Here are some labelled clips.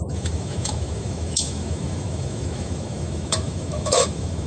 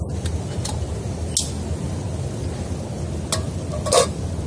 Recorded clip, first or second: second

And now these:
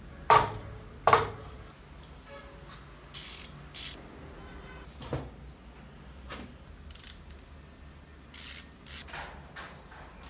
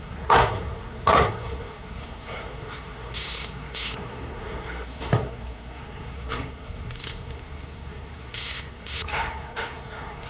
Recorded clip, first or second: first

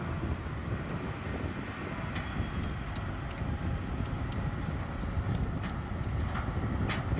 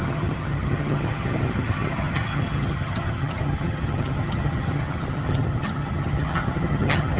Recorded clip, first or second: first